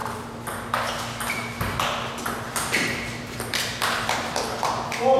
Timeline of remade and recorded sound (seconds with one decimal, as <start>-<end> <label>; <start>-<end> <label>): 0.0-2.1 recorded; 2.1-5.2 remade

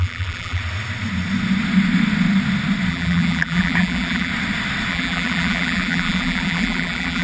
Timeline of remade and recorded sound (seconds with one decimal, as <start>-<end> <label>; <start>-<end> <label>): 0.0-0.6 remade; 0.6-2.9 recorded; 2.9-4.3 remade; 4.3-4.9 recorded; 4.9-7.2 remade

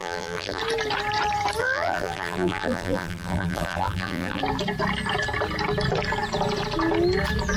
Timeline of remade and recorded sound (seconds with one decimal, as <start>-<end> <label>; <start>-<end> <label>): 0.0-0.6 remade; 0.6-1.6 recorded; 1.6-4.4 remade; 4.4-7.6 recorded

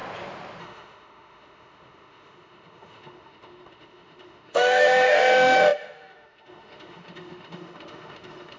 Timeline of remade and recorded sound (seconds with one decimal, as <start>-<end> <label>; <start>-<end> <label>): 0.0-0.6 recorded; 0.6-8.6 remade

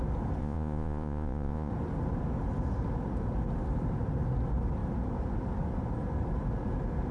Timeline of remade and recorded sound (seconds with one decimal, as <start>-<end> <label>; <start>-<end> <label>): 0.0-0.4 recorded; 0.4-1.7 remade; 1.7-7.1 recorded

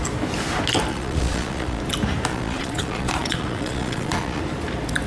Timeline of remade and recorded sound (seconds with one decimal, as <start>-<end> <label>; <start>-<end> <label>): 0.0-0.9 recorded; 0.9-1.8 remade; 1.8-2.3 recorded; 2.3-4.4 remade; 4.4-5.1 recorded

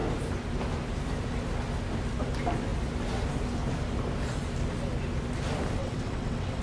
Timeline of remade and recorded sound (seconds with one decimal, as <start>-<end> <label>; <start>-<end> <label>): 0.0-5.8 recorded; 5.8-6.6 remade